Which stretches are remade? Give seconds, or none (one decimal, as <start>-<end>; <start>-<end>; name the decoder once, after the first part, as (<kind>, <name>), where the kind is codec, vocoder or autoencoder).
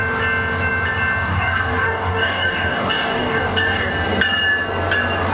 1.3-3.9 (codec, DAC)